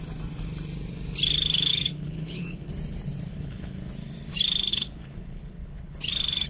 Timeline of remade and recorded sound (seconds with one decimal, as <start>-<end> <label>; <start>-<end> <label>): 0.0-1.7 recorded; 1.7-2.7 remade; 2.7-3.3 recorded; 3.3-3.9 remade; 3.9-4.7 recorded; 4.7-6.0 remade; 6.0-6.5 recorded